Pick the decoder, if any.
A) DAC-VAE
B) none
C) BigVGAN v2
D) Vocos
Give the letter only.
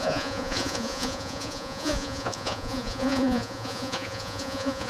D